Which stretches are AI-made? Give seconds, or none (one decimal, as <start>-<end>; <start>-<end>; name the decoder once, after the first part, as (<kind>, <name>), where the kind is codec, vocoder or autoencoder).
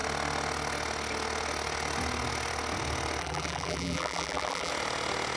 3.2-4.7 (vocoder, BigVGAN v2)